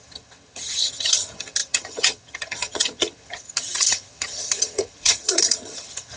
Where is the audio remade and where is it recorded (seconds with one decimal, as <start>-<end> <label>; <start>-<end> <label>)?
0.0-6.2 remade